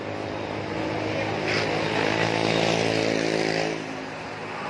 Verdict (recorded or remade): recorded